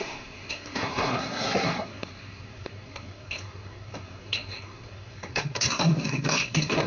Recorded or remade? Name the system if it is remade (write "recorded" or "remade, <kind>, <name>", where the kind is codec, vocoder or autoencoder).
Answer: remade, codec, SNAC